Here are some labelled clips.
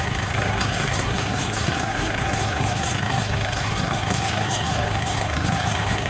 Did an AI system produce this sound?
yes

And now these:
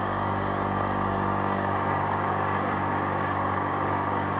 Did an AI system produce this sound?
yes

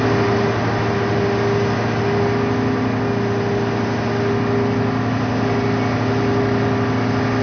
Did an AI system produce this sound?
no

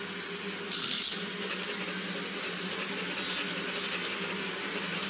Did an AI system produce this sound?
no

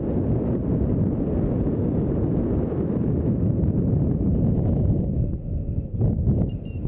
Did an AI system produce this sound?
no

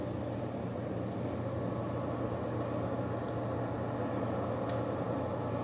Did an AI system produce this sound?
no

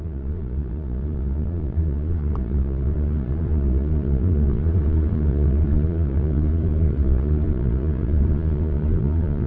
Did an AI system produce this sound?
yes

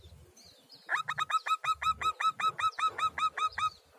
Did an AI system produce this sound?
no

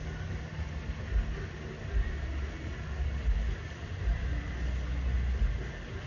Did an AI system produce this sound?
no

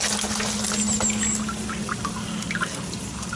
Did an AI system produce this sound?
no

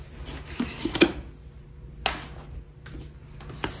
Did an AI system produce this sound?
no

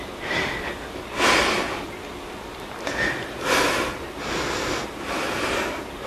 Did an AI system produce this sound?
no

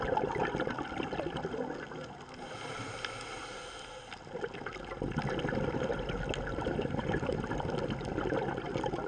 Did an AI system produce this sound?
no